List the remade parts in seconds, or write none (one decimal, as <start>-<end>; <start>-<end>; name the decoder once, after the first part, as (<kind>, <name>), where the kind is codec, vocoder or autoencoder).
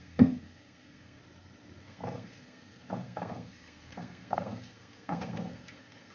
0.0-1.2 (codec, SNAC); 1.8-6.1